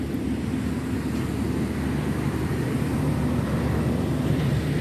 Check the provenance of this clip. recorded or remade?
recorded